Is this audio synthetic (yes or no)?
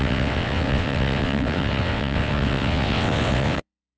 yes